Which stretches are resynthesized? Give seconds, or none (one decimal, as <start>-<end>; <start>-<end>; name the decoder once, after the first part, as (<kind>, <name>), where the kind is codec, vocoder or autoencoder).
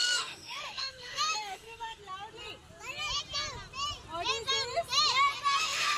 0.0-2.0 (autoencoder, DAC-VAE); 5.6-6.0